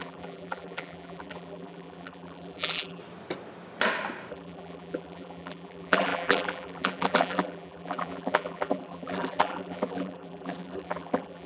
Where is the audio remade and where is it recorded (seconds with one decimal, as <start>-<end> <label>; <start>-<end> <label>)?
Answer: 0.0-3.0 remade; 3.0-4.3 recorded; 4.3-11.5 remade